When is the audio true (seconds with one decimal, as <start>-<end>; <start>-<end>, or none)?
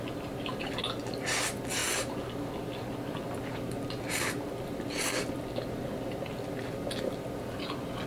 0.0-8.1